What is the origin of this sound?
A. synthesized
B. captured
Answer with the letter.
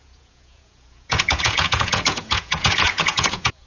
A